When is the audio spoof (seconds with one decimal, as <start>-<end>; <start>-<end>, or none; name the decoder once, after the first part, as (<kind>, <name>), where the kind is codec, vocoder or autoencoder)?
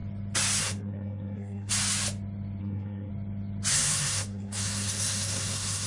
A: 0.6-1.7 (codec, SNAC); 2.6-3.1; 3.7-5.9